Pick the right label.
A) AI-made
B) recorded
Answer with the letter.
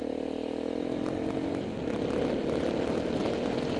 B